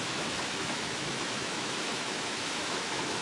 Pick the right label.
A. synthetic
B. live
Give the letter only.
A